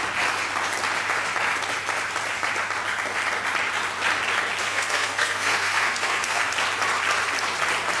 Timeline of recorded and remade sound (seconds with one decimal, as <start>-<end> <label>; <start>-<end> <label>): 0.0-4.6 recorded; 4.6-6.4 remade; 6.4-8.0 recorded